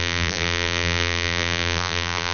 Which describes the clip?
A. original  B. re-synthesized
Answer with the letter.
B